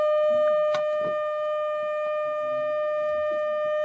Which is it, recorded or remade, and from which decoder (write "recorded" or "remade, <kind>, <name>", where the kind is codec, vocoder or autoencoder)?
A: recorded